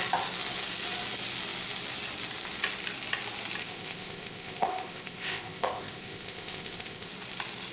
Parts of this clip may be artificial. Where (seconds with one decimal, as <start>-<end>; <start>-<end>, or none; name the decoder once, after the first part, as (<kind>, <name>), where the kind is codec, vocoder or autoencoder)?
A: 3.6-7.1 (codec, ZipCodec)